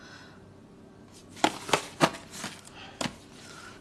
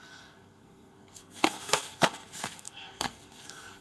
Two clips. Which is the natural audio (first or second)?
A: first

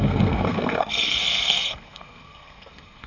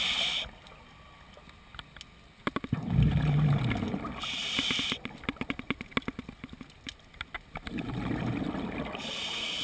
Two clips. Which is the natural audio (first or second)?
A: second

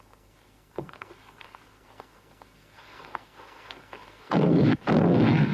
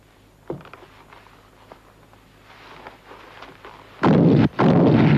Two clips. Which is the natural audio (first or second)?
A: second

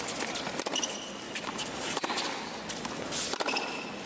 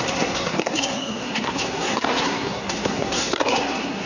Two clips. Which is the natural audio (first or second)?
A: first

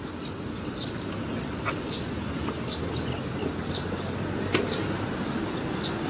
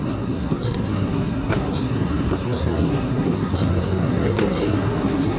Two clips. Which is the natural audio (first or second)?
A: first